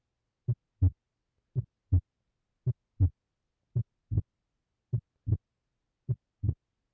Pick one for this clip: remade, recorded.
recorded